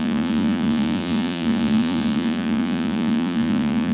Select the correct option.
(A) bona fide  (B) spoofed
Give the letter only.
B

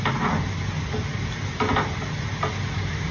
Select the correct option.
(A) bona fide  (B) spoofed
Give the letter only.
A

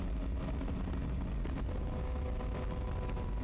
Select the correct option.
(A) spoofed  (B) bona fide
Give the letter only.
B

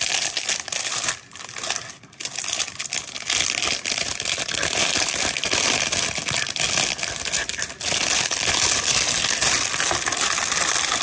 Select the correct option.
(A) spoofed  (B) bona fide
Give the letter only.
B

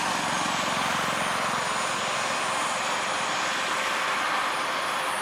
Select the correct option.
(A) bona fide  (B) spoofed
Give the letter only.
A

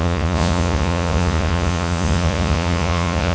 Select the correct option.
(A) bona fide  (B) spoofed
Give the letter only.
B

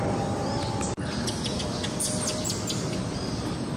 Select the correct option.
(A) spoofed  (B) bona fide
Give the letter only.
A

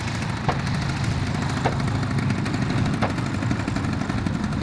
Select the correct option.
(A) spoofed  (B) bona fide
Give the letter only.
B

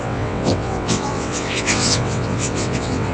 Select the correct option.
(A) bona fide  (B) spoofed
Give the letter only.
B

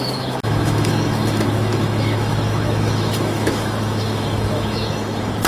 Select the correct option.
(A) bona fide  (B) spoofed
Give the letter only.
B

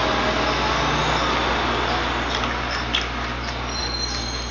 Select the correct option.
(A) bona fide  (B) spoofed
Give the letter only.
A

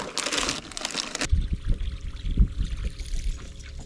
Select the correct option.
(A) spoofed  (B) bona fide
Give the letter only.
B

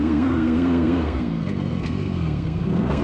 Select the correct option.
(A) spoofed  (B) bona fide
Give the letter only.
A